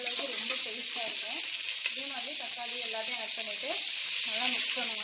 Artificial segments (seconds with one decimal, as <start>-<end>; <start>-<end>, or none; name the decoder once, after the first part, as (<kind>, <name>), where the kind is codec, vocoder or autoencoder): none